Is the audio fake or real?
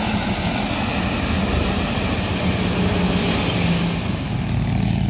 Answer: real